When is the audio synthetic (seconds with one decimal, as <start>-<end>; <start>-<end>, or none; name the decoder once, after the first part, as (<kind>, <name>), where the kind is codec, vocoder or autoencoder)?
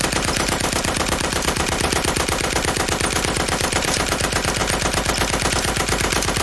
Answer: 0.0-4.6 (vocoder, BigVGAN v2); 5.5-6.4